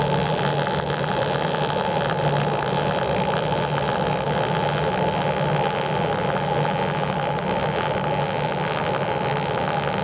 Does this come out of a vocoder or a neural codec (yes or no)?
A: no